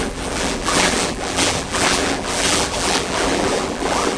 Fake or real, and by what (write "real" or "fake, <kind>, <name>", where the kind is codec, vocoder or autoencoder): fake, vocoder, BigVGAN v2